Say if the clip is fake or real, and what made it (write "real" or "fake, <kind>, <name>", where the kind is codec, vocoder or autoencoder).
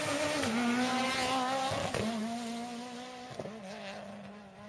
real